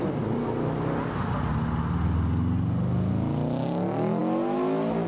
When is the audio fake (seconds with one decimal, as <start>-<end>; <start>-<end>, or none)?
none